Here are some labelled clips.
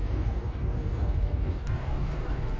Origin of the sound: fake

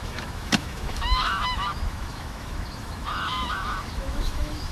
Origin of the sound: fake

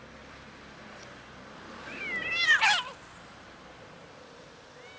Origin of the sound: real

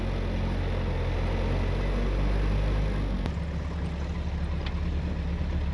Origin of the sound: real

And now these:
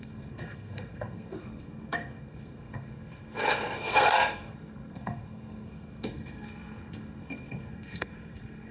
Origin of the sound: fake